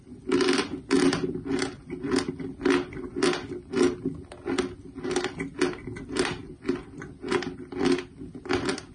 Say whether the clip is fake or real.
real